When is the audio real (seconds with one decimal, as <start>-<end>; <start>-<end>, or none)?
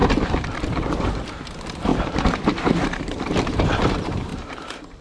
0.0-0.6; 4.3-5.0